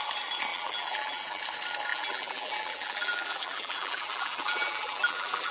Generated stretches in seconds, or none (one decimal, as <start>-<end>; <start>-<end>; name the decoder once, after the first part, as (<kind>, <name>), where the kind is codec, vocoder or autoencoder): 0.5-1.4 (vocoder, BigVGAN v2); 1.9-5.5